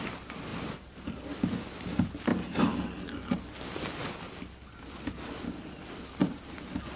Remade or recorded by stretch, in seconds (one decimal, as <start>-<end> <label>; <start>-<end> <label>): 0.0-0.5 recorded; 0.5-1.1 remade; 1.1-6.2 recorded; 6.2-7.0 remade